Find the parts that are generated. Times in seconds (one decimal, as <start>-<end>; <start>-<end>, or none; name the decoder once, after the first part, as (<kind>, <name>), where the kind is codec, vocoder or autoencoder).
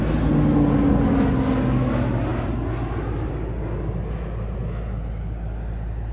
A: none